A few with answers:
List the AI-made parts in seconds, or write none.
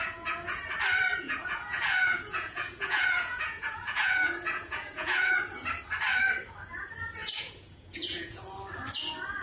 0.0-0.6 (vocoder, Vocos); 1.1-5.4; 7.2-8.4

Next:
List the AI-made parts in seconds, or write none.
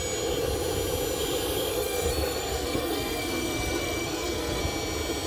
1.7-4.6 (codec, SNAC)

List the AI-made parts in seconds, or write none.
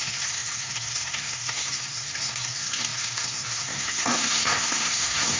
0.0-5.4 (codec, SNAC)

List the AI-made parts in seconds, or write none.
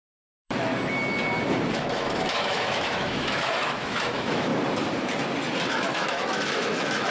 0.0-0.7 (autoencoder, DAC-VAE); 1.7-4.5; 5.7-7.1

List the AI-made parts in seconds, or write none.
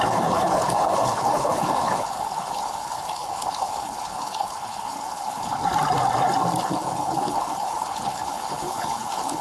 0.0-5.6 (codec, HILCodec); 6.6-9.4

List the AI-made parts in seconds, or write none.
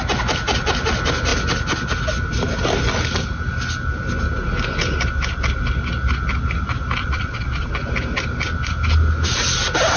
7.0-7.7 (vocoder, Vocos)